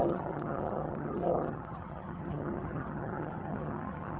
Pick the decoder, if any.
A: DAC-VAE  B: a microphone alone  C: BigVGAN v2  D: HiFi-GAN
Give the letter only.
D